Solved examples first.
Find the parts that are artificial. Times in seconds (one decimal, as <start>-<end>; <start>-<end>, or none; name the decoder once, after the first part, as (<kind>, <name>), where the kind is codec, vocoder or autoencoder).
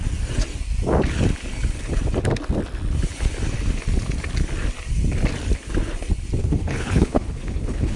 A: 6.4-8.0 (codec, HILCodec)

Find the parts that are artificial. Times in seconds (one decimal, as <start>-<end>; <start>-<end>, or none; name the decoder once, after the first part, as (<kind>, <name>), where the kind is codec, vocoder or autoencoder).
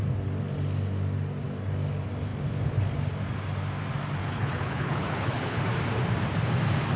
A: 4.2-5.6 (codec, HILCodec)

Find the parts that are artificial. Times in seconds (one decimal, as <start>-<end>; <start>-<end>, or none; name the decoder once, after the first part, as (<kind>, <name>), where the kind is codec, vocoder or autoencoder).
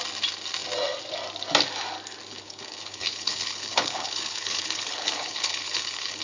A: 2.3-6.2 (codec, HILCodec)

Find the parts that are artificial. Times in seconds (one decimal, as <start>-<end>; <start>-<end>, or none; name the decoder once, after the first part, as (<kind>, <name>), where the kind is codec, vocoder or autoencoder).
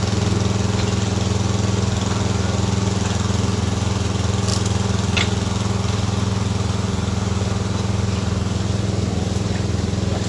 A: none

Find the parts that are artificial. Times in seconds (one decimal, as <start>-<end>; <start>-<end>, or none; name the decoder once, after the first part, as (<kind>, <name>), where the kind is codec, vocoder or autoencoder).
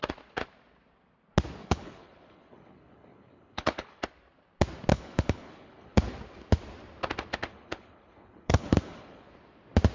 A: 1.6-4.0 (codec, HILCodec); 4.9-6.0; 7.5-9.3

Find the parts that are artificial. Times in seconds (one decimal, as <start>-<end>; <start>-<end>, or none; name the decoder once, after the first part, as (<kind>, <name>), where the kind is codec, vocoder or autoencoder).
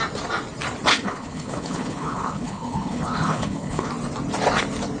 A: 0.9-3.9 (codec, HILCodec)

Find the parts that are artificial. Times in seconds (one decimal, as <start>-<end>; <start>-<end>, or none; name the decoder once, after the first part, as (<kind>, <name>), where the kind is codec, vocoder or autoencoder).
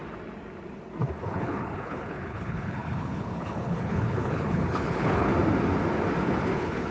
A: 1.2-5.3 (codec, HILCodec); 6.2-6.9